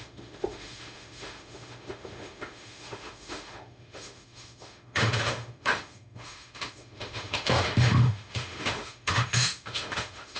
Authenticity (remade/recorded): remade